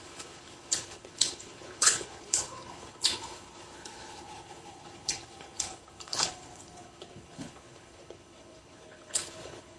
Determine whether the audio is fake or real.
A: fake